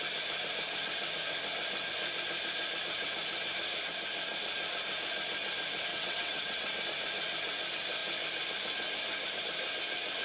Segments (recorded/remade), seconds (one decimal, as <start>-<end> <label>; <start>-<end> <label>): 0.0-5.9 recorded; 5.9-6.8 remade; 6.8-10.2 recorded